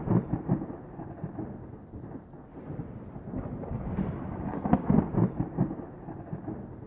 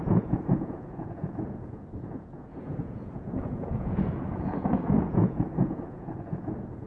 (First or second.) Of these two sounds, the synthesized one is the second